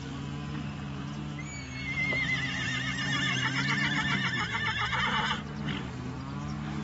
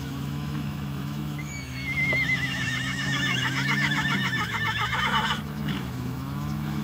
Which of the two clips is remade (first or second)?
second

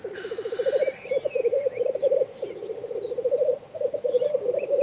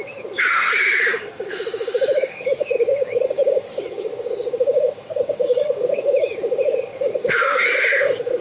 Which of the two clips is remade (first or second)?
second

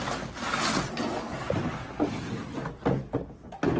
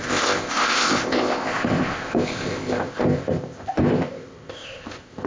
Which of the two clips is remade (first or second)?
second